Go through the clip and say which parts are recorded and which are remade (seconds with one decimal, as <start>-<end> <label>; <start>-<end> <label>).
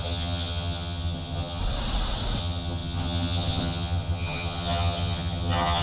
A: 0.0-1.6 remade; 1.6-2.4 recorded; 2.4-5.8 remade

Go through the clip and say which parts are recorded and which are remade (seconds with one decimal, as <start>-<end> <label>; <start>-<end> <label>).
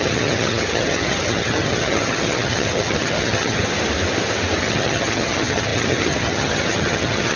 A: 0.0-3.6 remade; 3.6-4.6 recorded; 4.6-7.4 remade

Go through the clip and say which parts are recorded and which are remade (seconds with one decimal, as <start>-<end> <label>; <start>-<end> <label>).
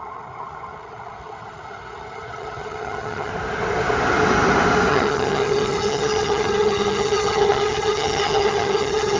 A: 0.0-3.3 remade; 3.3-4.9 recorded; 4.9-9.2 remade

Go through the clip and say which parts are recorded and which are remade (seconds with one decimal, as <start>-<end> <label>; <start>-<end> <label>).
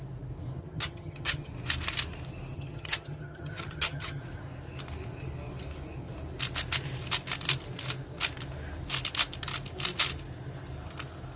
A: 0.0-0.6 recorded; 0.6-1.5 remade; 1.5-2.5 recorded; 2.5-4.2 remade; 4.2-11.4 recorded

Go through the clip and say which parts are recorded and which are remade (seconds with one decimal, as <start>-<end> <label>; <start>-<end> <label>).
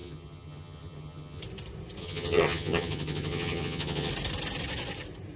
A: 0.0-1.4 remade; 1.4-2.0 recorded; 2.0-4.1 remade; 4.1-5.4 recorded